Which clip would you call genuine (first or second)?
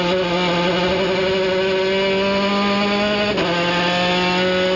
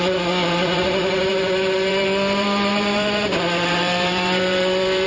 first